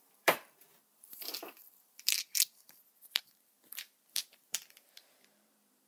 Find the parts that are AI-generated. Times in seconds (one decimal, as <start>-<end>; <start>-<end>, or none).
0.0-5.9